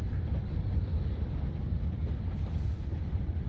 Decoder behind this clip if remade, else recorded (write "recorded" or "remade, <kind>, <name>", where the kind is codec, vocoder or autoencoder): recorded